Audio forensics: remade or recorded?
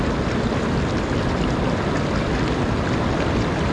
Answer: recorded